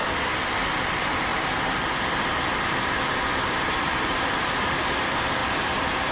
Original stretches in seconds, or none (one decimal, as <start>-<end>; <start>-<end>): 0.0-0.9